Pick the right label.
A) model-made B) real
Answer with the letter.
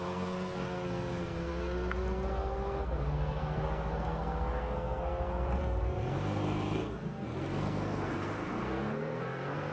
A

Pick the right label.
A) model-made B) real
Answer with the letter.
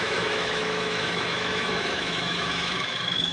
A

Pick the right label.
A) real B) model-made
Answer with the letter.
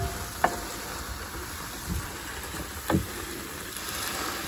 B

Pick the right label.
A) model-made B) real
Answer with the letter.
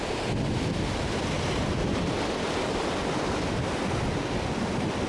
B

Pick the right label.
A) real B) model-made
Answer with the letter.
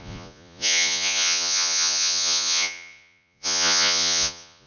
B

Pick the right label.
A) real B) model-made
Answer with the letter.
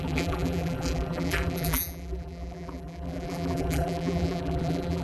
B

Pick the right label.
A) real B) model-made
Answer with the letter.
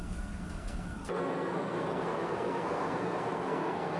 B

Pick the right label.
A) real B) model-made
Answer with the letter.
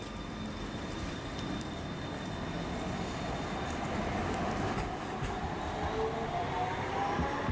A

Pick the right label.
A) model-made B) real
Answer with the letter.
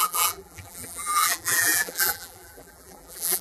A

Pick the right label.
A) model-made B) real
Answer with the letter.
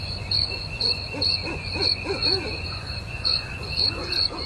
A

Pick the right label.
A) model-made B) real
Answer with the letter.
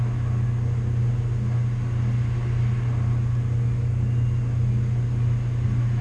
B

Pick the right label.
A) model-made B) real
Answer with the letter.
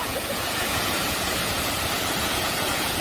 A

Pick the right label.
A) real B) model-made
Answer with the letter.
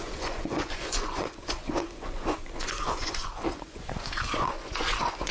B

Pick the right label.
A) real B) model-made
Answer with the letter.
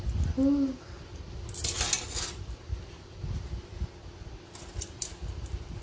A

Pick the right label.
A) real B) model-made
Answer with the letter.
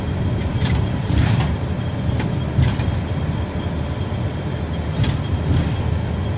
A